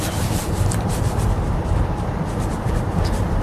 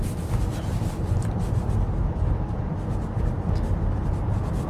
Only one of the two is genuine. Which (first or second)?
second